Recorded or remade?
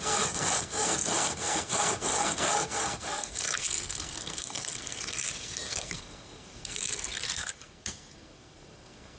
remade